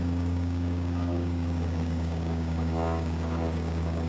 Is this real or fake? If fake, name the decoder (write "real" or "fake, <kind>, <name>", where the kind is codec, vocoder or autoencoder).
fake, codec, DAC